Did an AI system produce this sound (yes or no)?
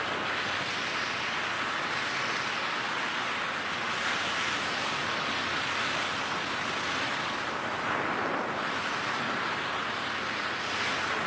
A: no